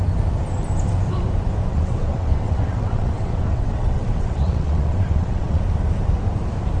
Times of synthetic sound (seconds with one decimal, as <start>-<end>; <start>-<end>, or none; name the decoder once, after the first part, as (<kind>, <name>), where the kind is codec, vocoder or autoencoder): 1.7-5.6 (vocoder, WaveNeXt)